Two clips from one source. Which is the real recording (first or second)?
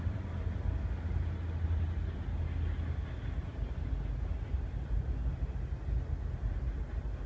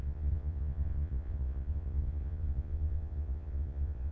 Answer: first